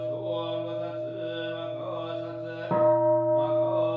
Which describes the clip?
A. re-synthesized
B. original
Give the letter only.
B